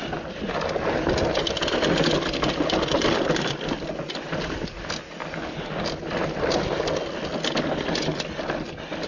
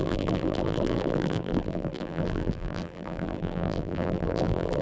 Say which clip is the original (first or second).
first